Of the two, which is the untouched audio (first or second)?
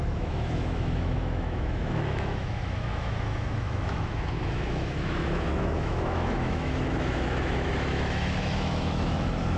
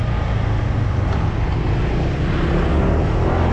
second